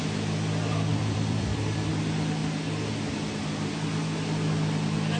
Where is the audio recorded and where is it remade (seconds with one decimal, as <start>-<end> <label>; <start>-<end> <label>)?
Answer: 0.0-0.9 recorded; 0.9-1.9 remade; 1.9-5.2 recorded